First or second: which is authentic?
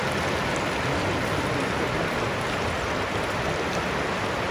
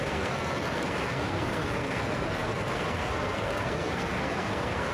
first